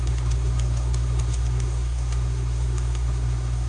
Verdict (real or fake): fake